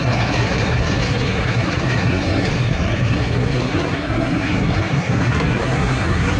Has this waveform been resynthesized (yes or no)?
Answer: yes